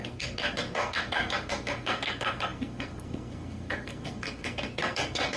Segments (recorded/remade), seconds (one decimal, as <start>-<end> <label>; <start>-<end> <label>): 0.0-5.4 remade